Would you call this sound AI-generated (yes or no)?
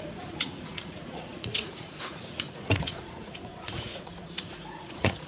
yes